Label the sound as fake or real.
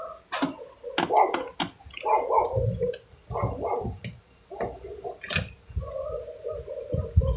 real